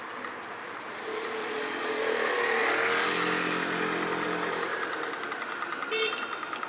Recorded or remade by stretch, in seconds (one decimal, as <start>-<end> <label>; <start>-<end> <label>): 0.0-1.4 recorded; 1.4-2.0 remade; 2.0-6.7 recorded